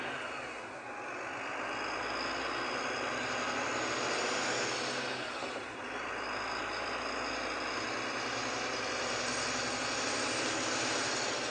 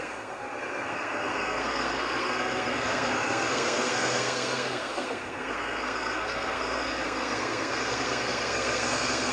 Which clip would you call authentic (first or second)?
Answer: first